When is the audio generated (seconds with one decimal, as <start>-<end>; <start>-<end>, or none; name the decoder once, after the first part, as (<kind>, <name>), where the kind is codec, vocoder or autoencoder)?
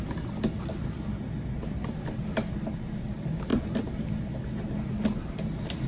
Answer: none